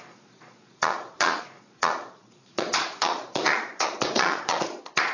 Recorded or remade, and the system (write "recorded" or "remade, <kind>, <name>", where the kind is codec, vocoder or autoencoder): remade, vocoder, Vocos